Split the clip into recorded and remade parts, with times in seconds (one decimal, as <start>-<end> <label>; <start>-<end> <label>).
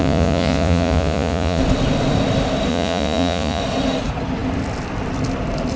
0.0-1.6 remade; 1.6-2.7 recorded; 2.7-3.6 remade; 3.6-5.8 recorded